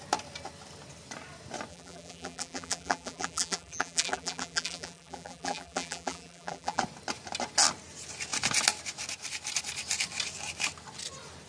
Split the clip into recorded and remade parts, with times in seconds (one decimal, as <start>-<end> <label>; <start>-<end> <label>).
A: 0.0-1.7 recorded; 1.7-6.8 remade; 6.8-11.5 recorded